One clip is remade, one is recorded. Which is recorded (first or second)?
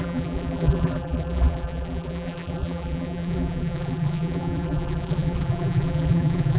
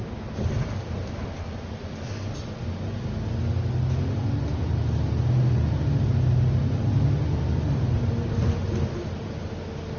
second